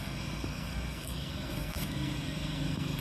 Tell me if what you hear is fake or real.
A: fake